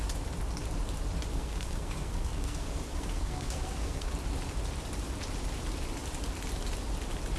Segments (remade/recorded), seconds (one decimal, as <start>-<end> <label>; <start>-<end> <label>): 0.0-1.3 recorded; 1.3-4.1 remade; 4.1-7.4 recorded